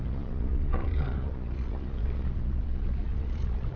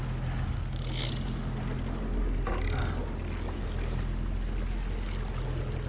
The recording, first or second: second